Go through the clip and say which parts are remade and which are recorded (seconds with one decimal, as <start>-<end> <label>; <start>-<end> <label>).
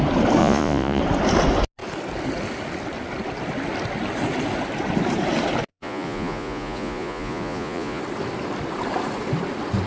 0.0-0.4 recorded; 0.4-1.0 remade; 1.0-5.7 recorded; 5.7-8.0 remade; 8.0-9.9 recorded